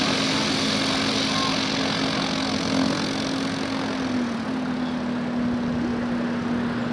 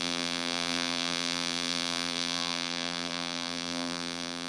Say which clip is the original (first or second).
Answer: first